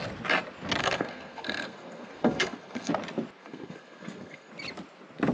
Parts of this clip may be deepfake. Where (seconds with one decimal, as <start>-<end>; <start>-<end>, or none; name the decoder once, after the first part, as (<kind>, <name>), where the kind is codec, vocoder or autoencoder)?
0.8-2.9 (codec, SNAC); 3.4-4.5